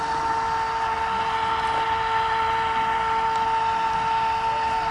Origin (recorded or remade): recorded